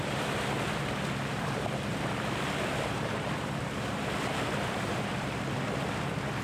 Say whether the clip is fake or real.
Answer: fake